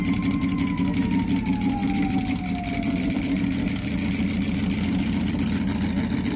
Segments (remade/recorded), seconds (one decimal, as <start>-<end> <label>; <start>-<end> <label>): 0.0-6.4 recorded